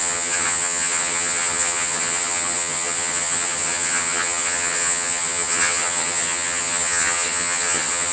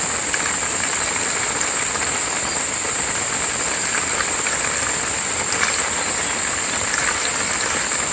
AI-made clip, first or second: first